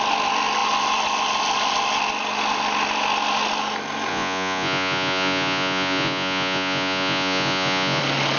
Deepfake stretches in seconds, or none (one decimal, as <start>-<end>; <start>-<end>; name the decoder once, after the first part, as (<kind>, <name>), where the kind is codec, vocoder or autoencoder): 4.1-8.0 (vocoder, Vocos)